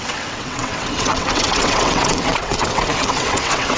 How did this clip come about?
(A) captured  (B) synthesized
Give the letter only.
B